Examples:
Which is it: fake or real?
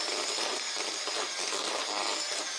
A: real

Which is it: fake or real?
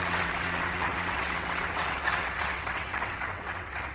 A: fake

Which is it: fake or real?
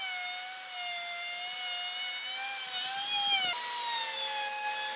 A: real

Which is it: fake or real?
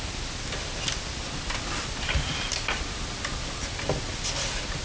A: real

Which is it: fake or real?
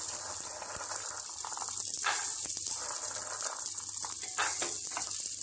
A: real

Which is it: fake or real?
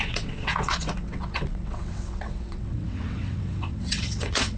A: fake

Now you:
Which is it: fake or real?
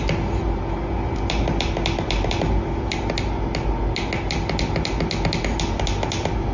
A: real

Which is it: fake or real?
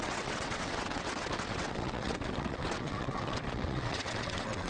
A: fake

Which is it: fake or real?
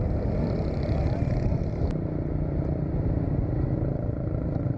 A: real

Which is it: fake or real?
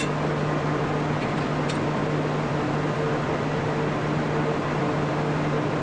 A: real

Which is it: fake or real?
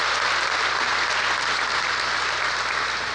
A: real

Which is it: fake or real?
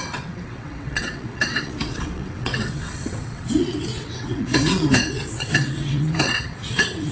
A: fake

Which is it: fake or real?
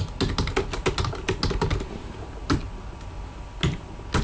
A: real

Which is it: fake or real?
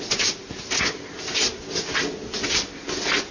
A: real